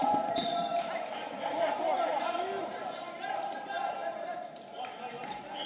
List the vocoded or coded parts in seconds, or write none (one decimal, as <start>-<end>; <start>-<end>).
0.0-0.5; 2.4-4.0; 5.1-5.7